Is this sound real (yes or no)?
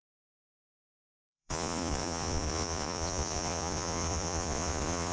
no